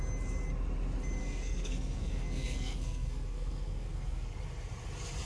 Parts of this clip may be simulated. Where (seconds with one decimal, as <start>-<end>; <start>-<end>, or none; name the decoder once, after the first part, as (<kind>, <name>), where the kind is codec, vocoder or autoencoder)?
1.2-4.4 (codec, SNAC)